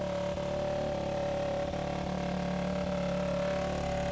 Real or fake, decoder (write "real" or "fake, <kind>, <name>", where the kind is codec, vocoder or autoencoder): real